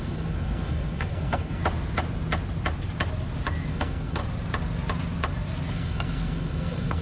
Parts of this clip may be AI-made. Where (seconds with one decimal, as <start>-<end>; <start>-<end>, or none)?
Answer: 0.0-1.6; 3.7-4.2; 5.7-7.0

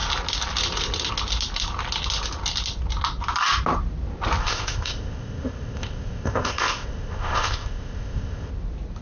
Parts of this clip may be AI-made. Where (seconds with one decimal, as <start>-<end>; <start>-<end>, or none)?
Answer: 4.4-8.5

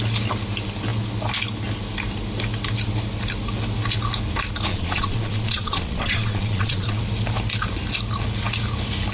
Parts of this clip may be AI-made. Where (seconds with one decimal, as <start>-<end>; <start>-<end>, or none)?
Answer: 4.7-7.0

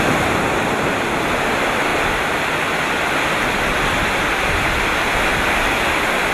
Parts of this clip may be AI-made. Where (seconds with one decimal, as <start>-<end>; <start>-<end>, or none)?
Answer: none

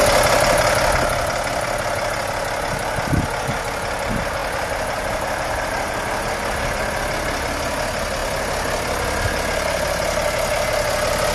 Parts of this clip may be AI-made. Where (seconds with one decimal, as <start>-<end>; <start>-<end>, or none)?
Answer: none

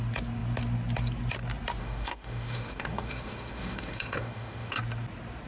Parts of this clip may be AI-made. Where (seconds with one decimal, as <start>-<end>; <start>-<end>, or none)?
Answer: 1.8-4.8

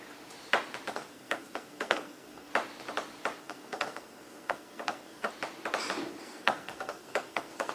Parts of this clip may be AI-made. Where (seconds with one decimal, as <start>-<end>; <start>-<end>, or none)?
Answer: 0.9-2.5; 3.4-5.3; 6.1-7.7